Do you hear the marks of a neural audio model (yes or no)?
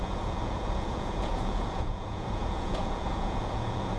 yes